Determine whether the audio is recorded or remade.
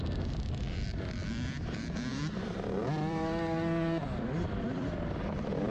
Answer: remade